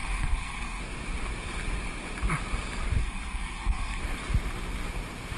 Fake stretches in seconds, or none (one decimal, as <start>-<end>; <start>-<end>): 0.0-0.8; 3.0-4.0